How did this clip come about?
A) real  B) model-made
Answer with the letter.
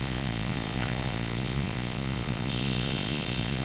B